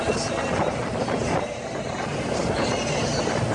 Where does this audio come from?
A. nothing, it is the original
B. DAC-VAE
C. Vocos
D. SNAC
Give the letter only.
A